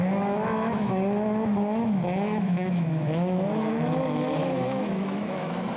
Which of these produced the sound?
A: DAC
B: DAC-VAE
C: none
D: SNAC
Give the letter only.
B